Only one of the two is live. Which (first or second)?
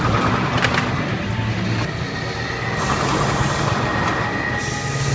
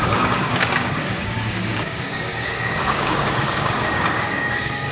first